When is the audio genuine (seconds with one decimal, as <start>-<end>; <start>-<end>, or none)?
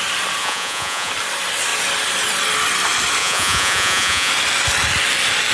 0.0-0.4; 1.1-3.2; 4.3-5.5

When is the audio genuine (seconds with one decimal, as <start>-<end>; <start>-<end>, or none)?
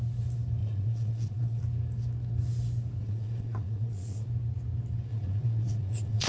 0.0-0.6; 1.6-3.0; 4.3-5.1